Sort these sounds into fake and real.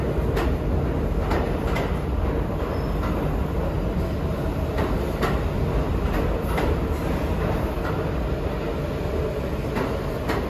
real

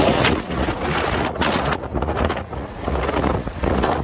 fake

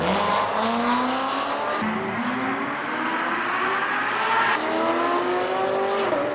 real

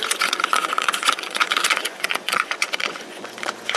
fake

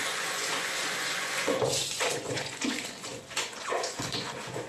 fake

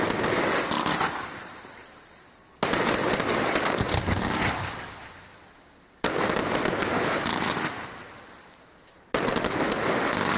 real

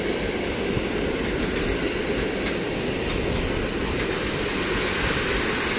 real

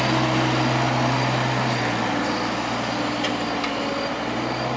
real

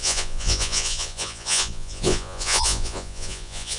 fake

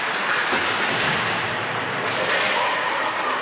real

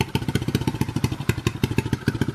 real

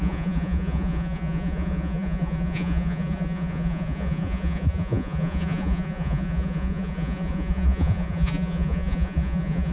fake